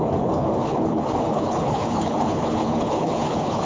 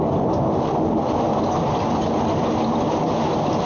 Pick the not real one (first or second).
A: first